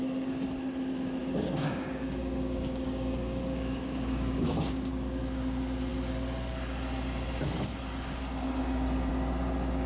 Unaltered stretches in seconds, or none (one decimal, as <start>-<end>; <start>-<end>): 0.0-1.2; 4.9-9.9